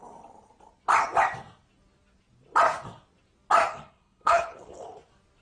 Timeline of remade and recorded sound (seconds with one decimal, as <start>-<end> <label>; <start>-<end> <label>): 0.0-3.7 recorded; 3.7-4.8 remade; 4.8-5.4 recorded